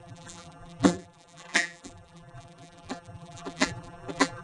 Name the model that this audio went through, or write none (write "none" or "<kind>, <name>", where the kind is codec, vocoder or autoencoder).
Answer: vocoder, BigVGAN v2